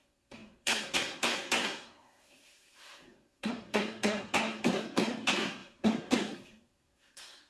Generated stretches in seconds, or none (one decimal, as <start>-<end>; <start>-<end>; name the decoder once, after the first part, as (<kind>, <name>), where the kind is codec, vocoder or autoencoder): 0.0-7.5 (codec, SNAC)